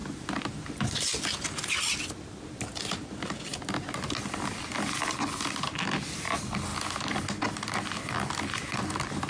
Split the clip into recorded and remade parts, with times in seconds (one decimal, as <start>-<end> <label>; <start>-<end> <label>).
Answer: 0.0-9.3 recorded